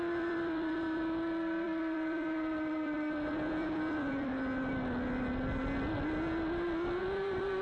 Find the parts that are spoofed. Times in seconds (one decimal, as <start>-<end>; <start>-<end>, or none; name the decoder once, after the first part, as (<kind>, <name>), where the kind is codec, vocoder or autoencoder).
0.0-4.3 (vocoder, BigVGAN v2); 7.0-7.6